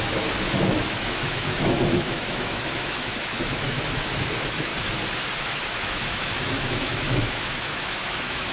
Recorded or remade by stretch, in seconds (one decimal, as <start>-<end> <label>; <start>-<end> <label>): 0.0-4.7 remade; 4.7-5.4 recorded; 5.4-8.5 remade